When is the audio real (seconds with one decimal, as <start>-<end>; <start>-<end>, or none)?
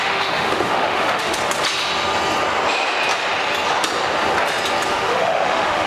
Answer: 1.4-4.9